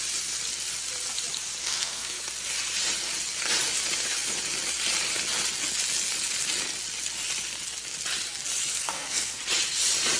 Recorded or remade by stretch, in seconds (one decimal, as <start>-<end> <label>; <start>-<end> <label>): 0.0-1.6 recorded; 1.6-2.2 remade; 2.2-8.7 recorded; 8.7-9.4 remade; 9.4-10.2 recorded